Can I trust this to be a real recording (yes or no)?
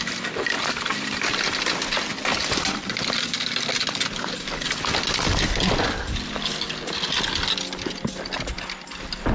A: yes